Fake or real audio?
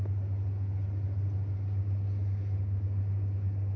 real